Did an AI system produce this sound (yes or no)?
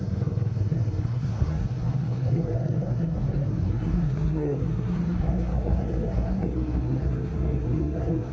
yes